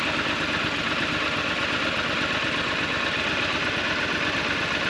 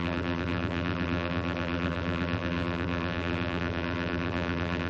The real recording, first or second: first